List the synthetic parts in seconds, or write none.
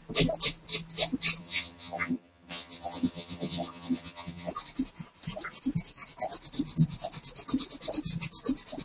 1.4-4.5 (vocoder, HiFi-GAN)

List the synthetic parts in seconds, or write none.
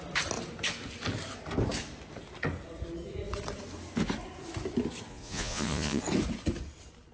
5.1-6.0 (vocoder, Vocos)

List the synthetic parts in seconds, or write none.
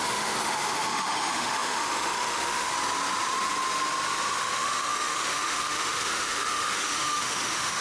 0.0-2.7 (autoencoder, DAC-VAE); 4.4-7.8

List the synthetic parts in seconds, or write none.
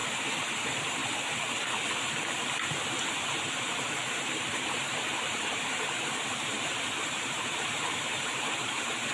0.6-1.0 (vocoder, BigVGAN v2); 3.5-9.1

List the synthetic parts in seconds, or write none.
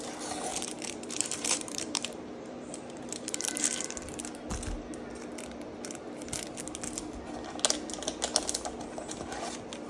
0.5-3.6 (vocoder, BigVGAN v2)